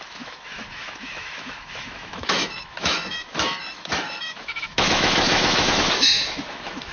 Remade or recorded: remade